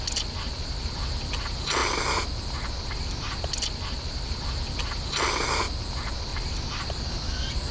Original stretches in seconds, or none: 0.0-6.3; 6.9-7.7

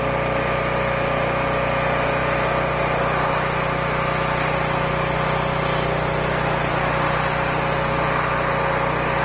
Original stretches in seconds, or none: 0.0-9.2

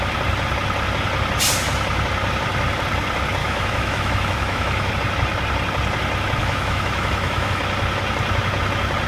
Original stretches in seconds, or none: 0.0-3.4; 4.9-6.4; 7.6-9.1

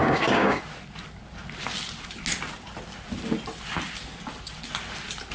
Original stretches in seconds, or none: 0.6-5.3